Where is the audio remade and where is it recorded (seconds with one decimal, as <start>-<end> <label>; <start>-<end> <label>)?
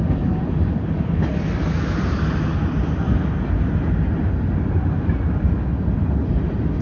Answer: 0.0-6.8 recorded